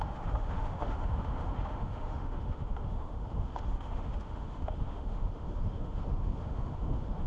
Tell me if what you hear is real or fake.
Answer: fake